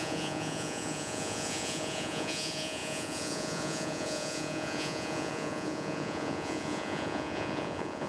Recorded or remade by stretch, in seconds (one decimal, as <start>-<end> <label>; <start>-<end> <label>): 0.0-8.1 remade